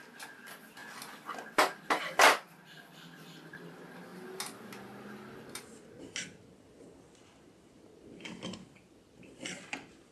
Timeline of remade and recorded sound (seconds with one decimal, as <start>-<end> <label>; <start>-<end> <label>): 0.0-10.1 recorded